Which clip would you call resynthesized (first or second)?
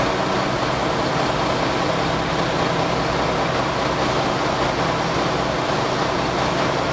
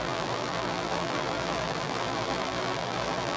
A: second